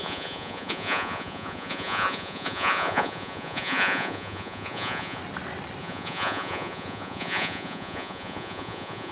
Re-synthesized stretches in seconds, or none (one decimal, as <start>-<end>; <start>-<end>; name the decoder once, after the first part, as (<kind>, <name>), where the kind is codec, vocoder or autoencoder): 0.0-5.2 (vocoder, Vocos); 5.8-9.1